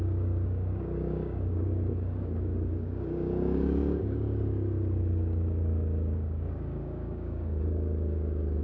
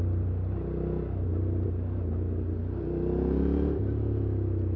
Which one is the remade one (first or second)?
first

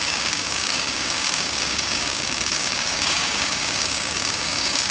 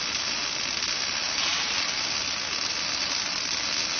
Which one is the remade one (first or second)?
first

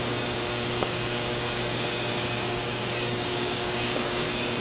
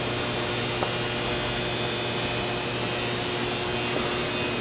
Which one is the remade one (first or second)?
first